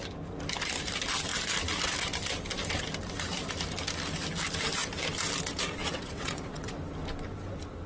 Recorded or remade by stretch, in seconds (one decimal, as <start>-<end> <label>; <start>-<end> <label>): 0.0-5.8 recorded; 5.8-6.7 remade; 6.7-7.9 recorded